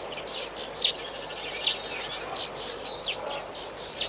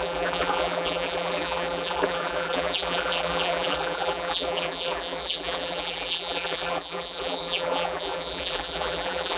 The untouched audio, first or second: first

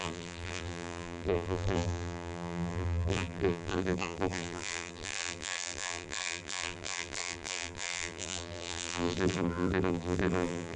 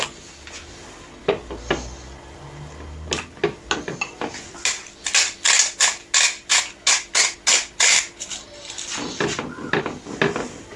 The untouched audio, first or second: second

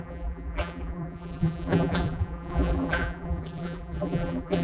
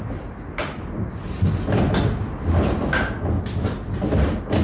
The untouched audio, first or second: second